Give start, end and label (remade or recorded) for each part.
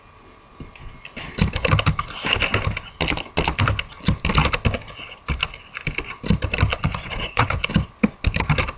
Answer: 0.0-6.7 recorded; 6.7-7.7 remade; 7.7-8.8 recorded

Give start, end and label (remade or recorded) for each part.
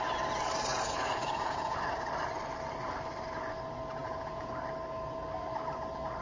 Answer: 0.0-0.7 recorded; 0.7-1.8 remade; 1.8-4.0 recorded; 4.0-4.5 remade; 4.5-6.2 recorded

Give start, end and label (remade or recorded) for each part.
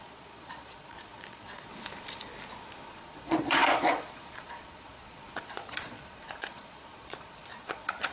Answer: 0.0-1.7 remade; 1.7-3.0 recorded; 3.0-8.1 remade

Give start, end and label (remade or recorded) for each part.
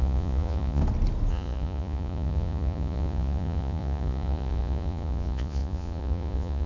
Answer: 0.0-0.8 remade; 0.8-1.3 recorded; 1.3-6.7 remade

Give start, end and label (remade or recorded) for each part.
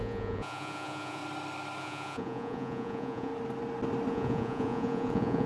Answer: 0.0-1.2 remade; 1.2-1.8 recorded; 1.8-3.3 remade; 3.3-4.1 recorded; 4.1-5.5 remade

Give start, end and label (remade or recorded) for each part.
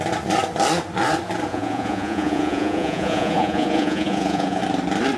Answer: 0.0-1.5 recorded; 1.5-4.6 remade; 4.6-5.2 recorded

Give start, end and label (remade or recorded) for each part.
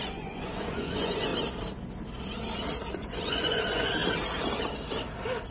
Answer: 0.0-1.3 remade; 1.3-2.9 recorded; 2.9-4.0 remade; 4.0-5.5 recorded